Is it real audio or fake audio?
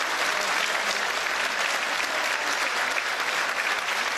real